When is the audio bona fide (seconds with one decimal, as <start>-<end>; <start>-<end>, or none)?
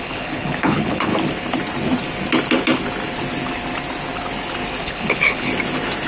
1.1-4.8; 5.5-6.1